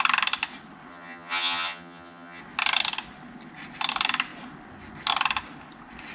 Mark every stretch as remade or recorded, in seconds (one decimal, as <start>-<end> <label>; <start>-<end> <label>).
0.0-0.9 recorded; 0.9-2.4 remade; 2.4-6.1 recorded